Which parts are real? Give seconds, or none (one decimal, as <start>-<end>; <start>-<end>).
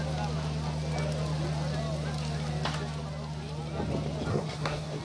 0.0-4.3